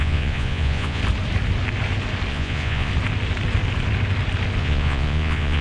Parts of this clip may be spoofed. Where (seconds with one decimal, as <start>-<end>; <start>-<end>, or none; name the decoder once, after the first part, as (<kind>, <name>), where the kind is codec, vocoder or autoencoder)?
0.0-1.0 (vocoder, Vocos); 2.3-2.9; 4.6-5.6